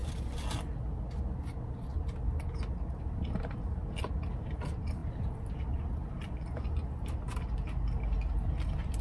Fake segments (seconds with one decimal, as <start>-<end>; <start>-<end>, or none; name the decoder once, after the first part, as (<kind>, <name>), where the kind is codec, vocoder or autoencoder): none